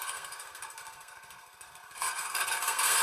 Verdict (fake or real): fake